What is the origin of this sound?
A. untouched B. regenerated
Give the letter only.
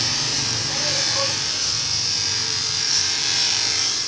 B